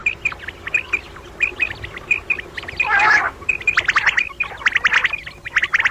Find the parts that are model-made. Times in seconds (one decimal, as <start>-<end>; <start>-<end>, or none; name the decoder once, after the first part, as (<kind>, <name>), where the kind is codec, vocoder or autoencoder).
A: none